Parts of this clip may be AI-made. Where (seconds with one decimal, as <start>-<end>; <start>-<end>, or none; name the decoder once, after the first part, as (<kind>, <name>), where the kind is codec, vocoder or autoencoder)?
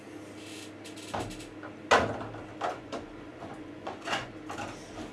2.7-4.3 (vocoder, Vocos)